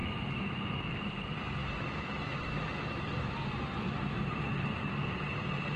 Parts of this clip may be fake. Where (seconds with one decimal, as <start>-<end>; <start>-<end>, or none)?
0.0-0.6; 1.6-3.3